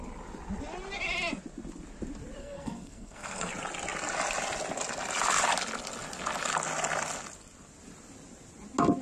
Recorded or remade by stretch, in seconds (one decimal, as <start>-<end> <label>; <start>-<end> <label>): 0.0-2.4 recorded; 2.4-3.5 remade; 3.5-9.0 recorded